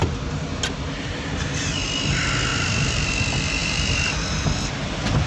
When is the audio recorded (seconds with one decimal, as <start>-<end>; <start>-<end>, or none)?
0.0-2.5; 3.1-3.6; 4.7-5.3